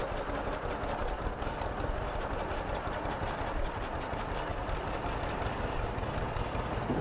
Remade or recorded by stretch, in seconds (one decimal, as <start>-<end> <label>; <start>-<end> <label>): 0.0-7.0 recorded